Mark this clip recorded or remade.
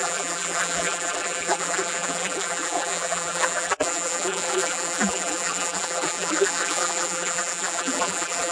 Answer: remade